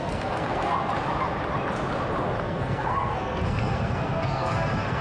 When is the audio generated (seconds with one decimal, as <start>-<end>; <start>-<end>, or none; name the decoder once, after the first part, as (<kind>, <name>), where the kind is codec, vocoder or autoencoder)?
0.0-0.9 (codec, SNAC); 2.4-5.0